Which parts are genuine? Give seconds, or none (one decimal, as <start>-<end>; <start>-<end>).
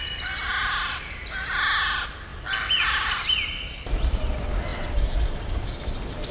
0.0-6.3